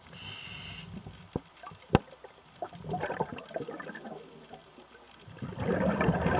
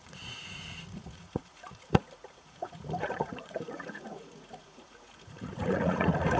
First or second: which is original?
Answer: first